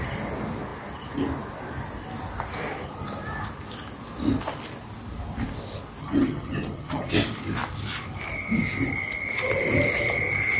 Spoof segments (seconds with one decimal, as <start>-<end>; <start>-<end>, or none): 6.0-7.1